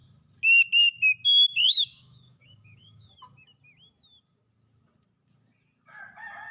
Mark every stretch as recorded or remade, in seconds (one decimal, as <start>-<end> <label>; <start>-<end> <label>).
0.0-1.3 recorded; 1.3-3.1 remade; 3.1-6.5 recorded